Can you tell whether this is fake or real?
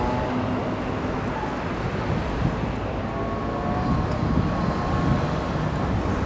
real